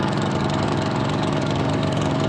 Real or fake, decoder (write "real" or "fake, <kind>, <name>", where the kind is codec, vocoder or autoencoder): fake, codec, DAC